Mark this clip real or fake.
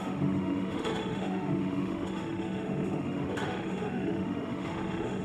fake